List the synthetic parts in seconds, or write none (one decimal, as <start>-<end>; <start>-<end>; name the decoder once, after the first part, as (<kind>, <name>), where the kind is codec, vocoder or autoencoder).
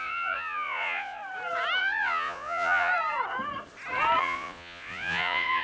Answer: 0.0-1.2 (vocoder, Vocos); 1.8-2.9; 4.2-5.6